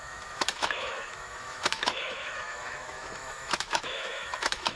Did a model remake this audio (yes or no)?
yes